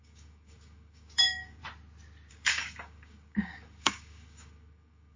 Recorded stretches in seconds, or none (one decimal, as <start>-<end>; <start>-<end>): 1.6-2.3